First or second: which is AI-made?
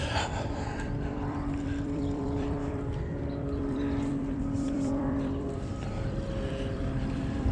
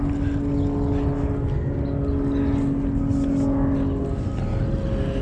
first